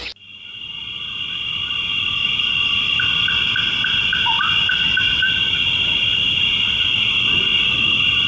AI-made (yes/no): no